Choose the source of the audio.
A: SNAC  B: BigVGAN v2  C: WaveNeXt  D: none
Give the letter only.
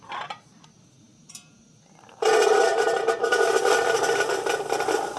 D